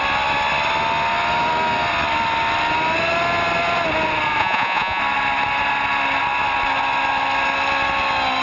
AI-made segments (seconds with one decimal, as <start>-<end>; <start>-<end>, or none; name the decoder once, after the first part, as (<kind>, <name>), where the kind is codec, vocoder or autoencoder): 4.4-5.0 (vocoder, Vocos)